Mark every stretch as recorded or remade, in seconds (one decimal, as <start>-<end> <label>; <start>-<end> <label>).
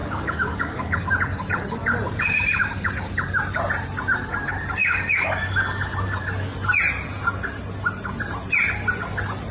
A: 0.0-1.0 remade; 1.0-4.8 recorded; 4.8-5.3 remade; 5.3-9.5 recorded